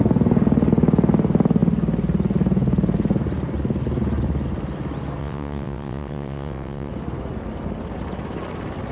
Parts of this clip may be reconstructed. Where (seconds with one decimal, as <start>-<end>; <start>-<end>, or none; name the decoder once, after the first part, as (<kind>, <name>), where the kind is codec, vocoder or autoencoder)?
5.2-6.9 (vocoder, WaveNeXt)